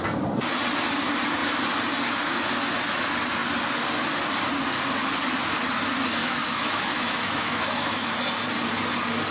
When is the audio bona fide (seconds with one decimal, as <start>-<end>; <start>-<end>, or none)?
0.0-6.2; 8.1-9.3